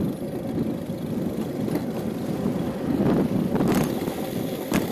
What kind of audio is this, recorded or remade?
recorded